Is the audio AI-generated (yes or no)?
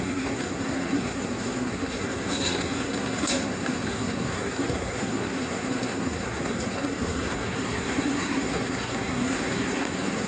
yes